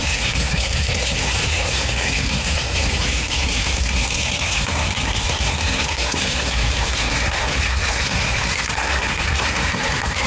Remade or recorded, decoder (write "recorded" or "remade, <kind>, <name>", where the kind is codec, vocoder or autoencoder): remade, codec, SNAC